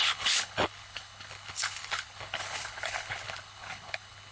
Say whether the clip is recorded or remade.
remade